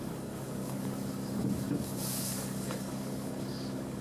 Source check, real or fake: fake